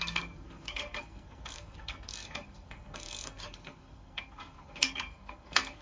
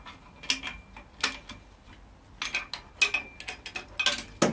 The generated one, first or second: first